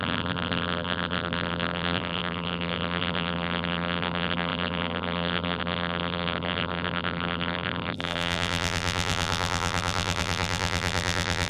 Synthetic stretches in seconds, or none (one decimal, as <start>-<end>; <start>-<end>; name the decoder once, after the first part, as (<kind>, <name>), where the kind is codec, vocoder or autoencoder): 0.0-11.5 (vocoder, BigVGAN v2)